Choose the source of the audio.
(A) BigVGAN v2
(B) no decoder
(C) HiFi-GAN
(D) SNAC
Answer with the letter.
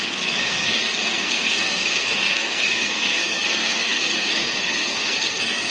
D